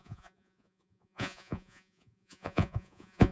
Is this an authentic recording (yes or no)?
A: no